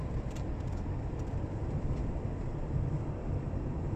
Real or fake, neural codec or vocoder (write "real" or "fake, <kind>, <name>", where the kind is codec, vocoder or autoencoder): fake, vocoder, BigVGAN v2